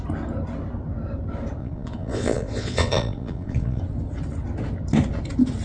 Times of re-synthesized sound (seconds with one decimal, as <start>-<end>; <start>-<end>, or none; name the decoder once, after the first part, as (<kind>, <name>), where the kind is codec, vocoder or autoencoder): 1.6-3.8 (vocoder, Vocos)